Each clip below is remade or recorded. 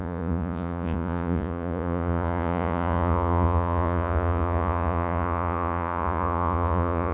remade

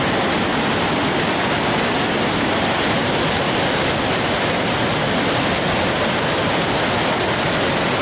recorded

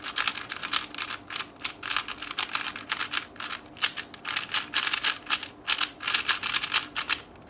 recorded